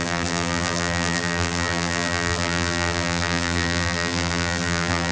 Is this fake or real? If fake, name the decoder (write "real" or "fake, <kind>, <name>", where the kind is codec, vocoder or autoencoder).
fake, vocoder, BigVGAN v2